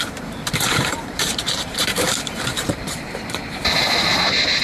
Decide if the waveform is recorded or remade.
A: remade